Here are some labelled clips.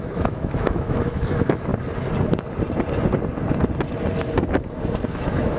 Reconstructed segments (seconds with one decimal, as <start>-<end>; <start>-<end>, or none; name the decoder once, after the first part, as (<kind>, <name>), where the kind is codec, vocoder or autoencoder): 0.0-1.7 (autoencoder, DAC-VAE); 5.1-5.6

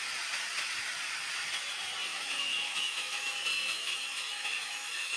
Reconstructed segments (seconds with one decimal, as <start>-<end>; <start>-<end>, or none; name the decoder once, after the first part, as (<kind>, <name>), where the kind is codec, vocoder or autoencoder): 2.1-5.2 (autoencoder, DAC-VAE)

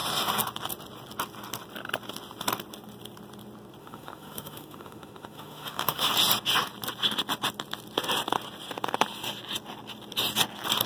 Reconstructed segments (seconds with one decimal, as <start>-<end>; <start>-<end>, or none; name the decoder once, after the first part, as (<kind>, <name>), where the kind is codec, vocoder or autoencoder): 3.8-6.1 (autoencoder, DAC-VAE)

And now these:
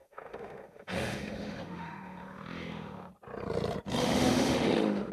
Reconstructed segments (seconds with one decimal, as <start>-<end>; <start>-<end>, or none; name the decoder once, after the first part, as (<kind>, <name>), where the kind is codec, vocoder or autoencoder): 0.0-3.1 (autoencoder, DAC-VAE); 4.0-5.1